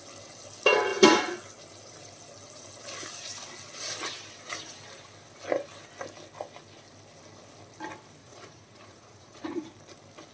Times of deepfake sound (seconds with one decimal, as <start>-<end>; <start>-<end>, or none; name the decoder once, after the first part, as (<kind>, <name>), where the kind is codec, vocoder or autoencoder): 8.2-9.7 (vocoder, Vocos)